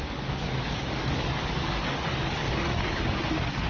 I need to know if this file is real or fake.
fake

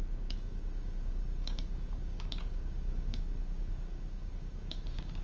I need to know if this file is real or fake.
fake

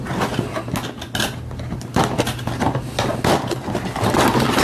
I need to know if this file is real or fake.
real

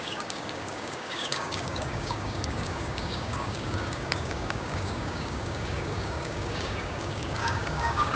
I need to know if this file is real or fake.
fake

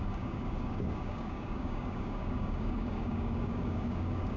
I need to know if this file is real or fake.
fake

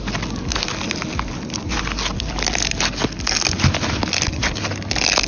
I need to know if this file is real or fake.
real